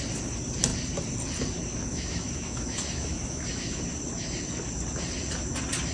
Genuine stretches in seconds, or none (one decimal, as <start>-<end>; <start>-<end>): 0.0-1.9; 3.8-5.9